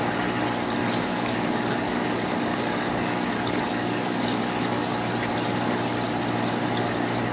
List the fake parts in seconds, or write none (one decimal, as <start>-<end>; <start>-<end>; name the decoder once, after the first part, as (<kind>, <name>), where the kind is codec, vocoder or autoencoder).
0.8-4.8 (codec, DAC)